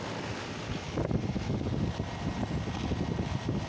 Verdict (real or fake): real